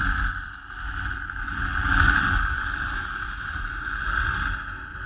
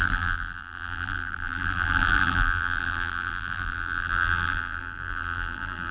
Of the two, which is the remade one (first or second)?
second